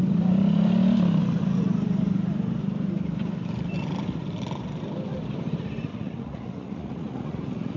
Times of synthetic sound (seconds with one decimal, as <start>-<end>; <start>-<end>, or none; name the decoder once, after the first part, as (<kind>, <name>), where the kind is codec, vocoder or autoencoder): 5.9-7.8 (vocoder, Vocos)